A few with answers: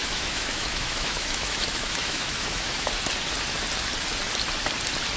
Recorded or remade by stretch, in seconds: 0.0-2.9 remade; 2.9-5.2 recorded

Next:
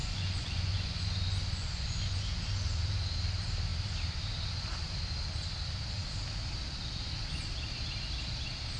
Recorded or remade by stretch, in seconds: 0.0-2.2 remade; 2.2-8.8 recorded